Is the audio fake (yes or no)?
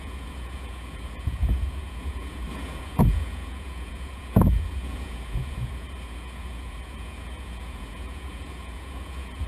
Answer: yes